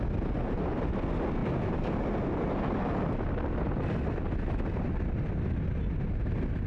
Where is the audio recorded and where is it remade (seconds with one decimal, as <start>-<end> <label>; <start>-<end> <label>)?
0.0-6.7 recorded